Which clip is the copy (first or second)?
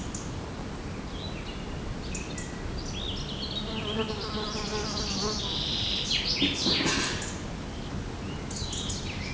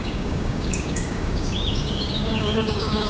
second